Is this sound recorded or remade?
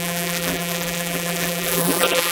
remade